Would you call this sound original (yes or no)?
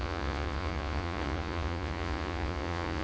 no